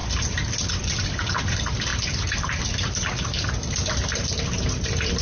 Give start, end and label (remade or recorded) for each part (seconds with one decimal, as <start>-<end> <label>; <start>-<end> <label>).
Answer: 0.0-5.2 remade